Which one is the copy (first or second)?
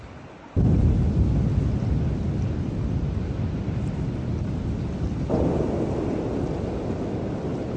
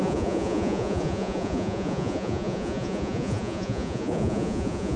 second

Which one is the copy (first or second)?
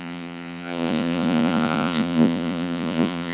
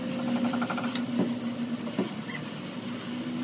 first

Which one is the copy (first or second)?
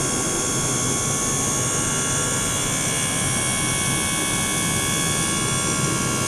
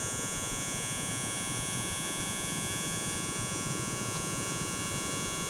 second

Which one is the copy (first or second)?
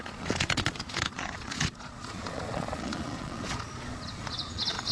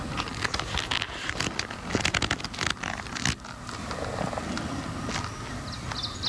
first